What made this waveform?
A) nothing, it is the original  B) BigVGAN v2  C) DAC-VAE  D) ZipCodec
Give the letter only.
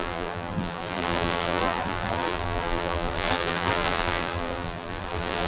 B